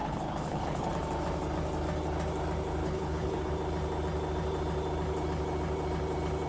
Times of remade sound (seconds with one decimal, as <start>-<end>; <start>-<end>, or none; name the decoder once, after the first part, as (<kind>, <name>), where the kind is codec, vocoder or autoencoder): 0.0-0.9 (codec, HILCodec); 2.8-3.5